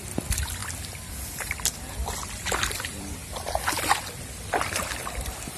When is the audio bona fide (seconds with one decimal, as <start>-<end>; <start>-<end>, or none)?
0.6-2.6; 3.2-4.0